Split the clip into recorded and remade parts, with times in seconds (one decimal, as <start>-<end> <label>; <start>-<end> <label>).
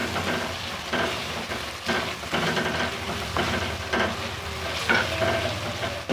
0.0-6.1 recorded